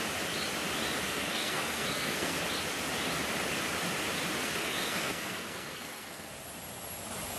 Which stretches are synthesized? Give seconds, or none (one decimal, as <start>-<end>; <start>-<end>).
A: 1.0-2.4; 4.4-6.3